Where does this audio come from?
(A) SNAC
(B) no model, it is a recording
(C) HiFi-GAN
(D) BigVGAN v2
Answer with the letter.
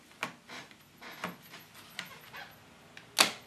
B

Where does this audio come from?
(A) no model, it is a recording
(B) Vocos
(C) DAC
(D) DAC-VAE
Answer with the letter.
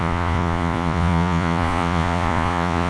B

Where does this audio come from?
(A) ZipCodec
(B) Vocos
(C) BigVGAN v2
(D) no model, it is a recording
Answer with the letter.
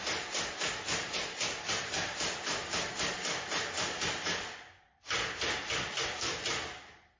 D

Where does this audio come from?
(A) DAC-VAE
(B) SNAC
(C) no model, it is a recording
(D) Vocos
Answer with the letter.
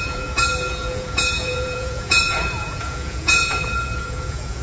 D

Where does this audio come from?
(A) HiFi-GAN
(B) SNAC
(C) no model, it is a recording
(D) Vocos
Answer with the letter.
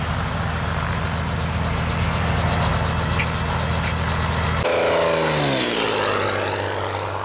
C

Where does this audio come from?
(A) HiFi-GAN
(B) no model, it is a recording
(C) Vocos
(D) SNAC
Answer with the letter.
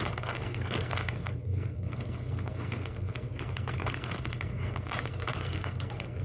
D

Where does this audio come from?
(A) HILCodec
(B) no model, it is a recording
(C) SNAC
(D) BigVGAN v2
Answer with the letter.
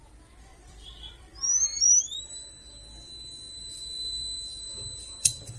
D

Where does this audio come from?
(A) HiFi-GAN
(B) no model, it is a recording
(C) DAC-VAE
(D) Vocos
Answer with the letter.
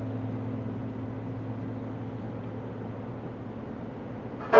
B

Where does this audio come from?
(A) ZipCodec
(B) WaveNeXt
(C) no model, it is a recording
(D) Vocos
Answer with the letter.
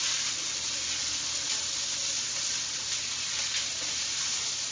C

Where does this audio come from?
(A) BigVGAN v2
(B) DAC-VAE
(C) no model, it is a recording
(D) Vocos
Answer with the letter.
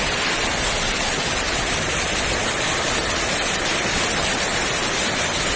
C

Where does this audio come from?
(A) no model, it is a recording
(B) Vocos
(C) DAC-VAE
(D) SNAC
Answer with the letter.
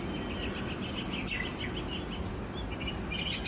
A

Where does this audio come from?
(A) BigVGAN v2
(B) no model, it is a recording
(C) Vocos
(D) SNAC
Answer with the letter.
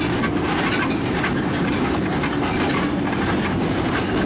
B